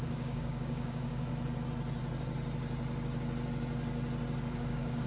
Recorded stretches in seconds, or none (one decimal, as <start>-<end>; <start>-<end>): 1.3-4.4